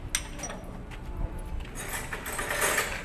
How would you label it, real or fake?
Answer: real